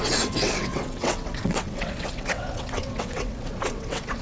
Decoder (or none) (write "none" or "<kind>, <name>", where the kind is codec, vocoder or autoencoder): vocoder, WaveNeXt